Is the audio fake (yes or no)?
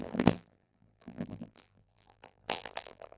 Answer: yes